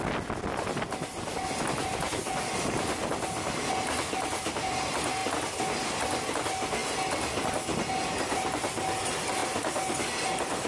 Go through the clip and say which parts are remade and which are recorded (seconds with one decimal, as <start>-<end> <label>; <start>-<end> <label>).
0.0-10.7 recorded